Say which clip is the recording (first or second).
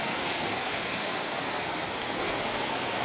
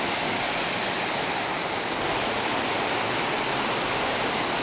second